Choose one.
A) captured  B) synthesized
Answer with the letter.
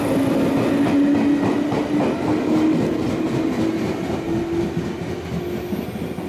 A